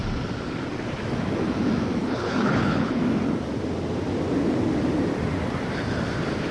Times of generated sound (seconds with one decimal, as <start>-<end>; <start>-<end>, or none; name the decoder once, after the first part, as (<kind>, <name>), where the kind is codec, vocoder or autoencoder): 2.0-3.0 (codec, HILCodec)